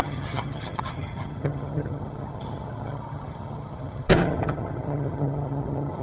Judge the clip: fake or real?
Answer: fake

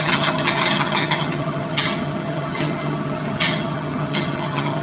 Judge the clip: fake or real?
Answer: fake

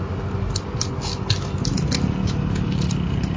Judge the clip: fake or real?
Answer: real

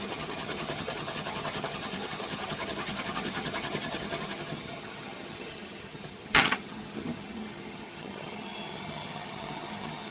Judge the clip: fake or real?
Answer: fake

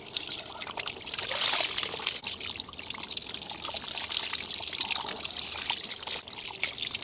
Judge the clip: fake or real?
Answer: real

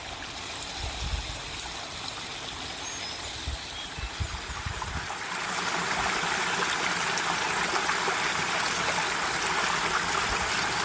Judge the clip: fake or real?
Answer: real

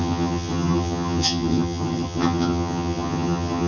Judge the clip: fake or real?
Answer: fake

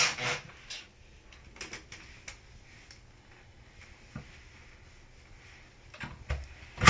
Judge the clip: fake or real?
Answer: real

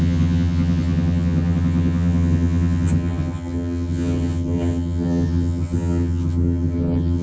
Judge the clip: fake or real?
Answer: fake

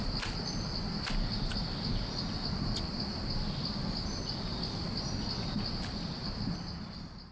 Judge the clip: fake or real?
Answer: real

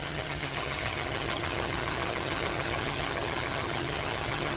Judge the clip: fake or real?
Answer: fake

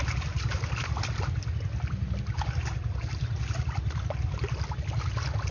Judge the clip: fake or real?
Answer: real